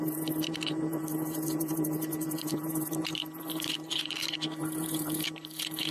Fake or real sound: fake